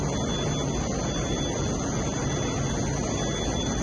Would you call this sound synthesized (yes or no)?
no